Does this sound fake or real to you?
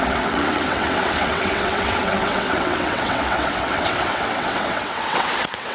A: fake